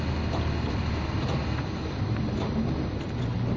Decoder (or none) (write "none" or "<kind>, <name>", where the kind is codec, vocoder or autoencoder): none